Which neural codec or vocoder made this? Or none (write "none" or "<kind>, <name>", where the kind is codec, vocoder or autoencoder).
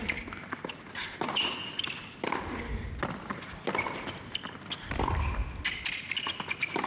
none